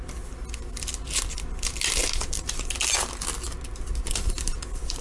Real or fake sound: real